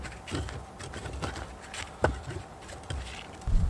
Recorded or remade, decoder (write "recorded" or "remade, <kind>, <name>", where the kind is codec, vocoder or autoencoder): recorded